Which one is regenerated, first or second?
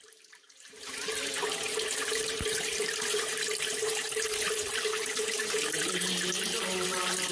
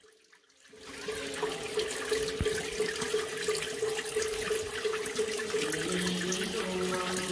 first